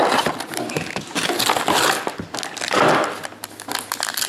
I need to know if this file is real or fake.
real